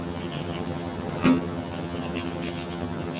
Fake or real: fake